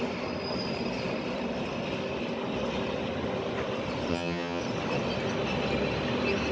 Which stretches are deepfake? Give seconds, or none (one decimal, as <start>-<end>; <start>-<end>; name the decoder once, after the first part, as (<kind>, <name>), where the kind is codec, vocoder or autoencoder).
4.1-4.6 (vocoder, HiFi-GAN)